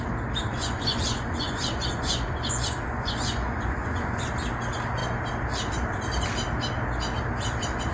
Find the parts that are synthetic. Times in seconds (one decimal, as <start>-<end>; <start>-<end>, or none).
0.5-4.3